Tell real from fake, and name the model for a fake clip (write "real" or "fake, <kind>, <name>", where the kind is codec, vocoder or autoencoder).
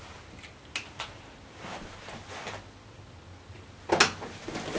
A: real